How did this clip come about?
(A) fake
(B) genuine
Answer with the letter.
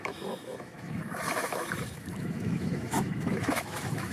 A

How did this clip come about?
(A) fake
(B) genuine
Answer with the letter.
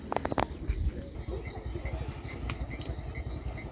B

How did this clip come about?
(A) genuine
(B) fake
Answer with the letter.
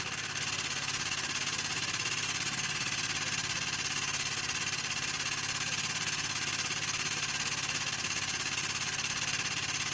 A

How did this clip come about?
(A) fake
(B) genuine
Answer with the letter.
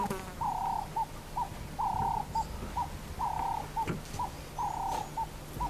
B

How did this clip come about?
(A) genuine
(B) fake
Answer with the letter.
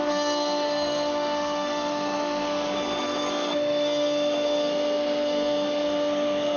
B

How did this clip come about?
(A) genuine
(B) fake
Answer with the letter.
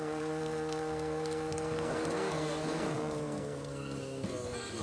B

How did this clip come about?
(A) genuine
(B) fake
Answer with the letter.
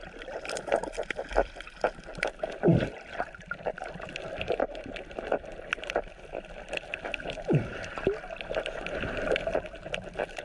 A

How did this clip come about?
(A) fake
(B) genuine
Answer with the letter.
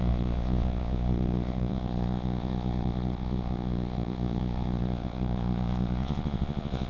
A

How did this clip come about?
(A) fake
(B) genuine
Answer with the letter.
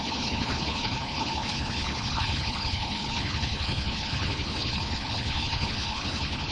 A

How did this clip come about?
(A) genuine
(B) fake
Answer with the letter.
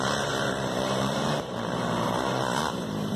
B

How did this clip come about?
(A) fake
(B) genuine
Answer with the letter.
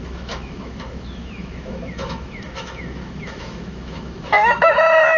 A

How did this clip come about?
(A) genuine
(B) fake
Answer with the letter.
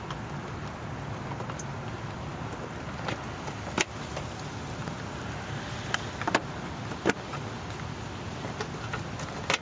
A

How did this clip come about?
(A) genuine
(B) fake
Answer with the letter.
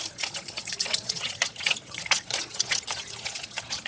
B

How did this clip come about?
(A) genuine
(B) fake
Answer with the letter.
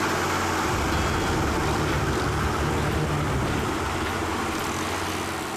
A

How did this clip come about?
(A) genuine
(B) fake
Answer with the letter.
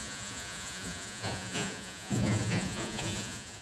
B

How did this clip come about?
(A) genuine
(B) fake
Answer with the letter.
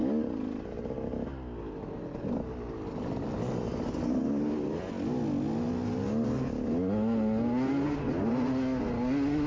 A